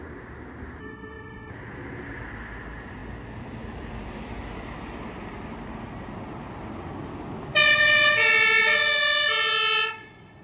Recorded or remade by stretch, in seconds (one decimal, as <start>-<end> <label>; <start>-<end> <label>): 0.0-0.8 recorded; 0.8-1.5 remade; 1.5-10.4 recorded